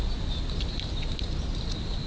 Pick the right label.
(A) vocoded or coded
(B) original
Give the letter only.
B